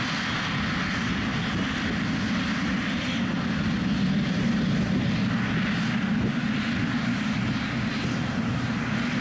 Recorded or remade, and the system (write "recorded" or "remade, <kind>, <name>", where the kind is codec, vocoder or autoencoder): recorded